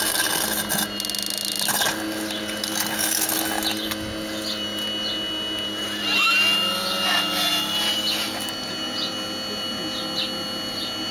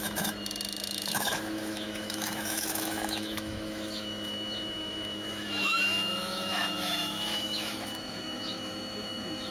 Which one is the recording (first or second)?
first